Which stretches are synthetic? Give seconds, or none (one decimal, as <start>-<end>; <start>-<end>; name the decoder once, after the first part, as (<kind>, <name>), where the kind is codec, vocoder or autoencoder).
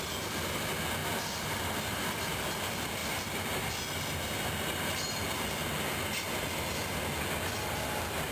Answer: none